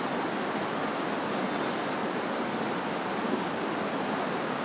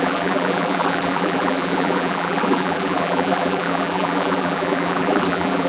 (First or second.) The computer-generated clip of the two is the second